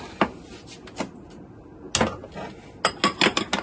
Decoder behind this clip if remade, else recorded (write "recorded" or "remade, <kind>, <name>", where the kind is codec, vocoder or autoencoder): recorded